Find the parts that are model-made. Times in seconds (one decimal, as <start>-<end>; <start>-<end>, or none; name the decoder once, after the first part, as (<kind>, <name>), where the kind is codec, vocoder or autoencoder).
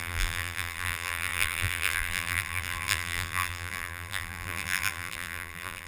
0.0-5.9 (vocoder, BigVGAN v2)